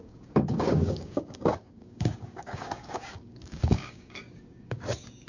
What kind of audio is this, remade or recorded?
remade